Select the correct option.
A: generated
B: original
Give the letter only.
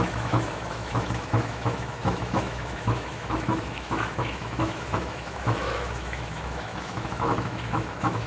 A